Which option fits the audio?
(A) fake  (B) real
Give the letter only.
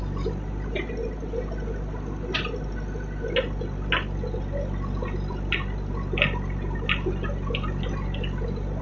B